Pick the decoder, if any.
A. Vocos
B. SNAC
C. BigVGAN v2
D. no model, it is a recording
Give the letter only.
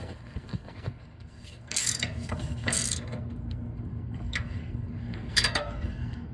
B